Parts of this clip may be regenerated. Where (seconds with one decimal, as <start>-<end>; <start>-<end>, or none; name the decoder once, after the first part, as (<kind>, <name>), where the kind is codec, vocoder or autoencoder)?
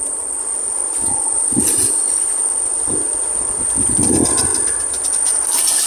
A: none